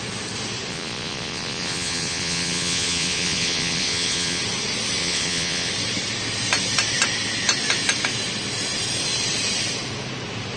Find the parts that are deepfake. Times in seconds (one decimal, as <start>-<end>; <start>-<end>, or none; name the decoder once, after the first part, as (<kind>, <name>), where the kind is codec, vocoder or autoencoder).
0.7-4.4 (vocoder, Vocos); 5.0-5.7